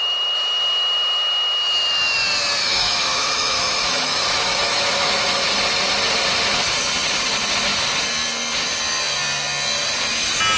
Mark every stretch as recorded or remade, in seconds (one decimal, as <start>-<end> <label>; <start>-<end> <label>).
0.0-2.6 recorded; 2.6-5.3 remade; 5.3-10.6 recorded